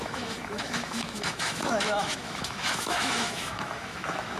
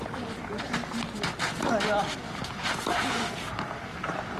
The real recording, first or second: second